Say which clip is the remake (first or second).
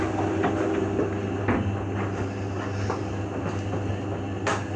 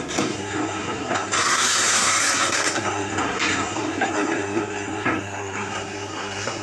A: second